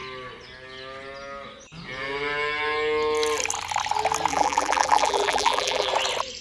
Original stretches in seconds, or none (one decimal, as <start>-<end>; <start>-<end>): 0.0-4.3; 5.9-6.4